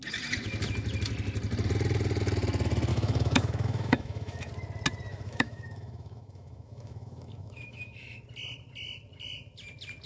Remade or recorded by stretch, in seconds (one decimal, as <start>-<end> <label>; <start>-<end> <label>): 0.0-2.9 recorded; 2.9-4.5 remade; 4.5-5.1 recorded; 5.1-8.2 remade; 8.2-10.1 recorded